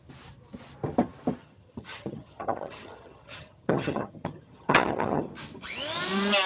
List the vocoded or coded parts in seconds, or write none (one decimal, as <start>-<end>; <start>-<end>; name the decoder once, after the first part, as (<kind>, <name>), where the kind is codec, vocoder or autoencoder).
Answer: 1.4-5.3 (vocoder, HiFi-GAN)